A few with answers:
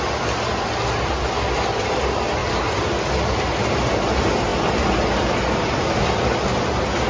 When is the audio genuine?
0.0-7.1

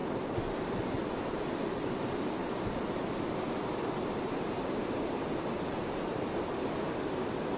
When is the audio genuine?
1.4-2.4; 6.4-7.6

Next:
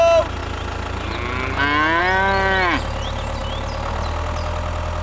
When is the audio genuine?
0.0-5.0